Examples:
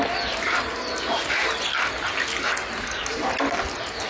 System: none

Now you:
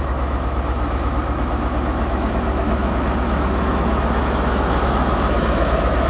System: autoencoder, DAC-VAE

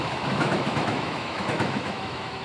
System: autoencoder, DAC-VAE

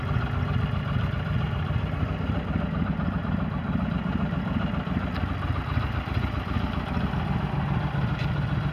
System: none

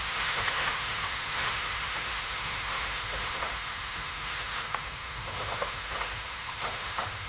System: autoencoder, DAC-VAE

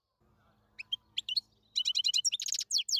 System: none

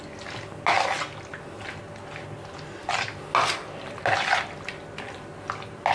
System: none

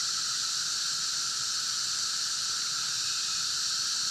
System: none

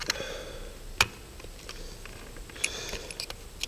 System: none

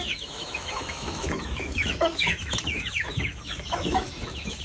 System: autoencoder, DAC-VAE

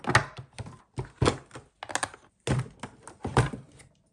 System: none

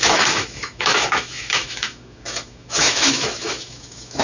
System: autoencoder, DAC-VAE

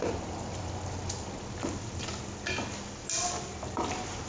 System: none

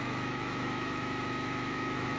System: autoencoder, DAC-VAE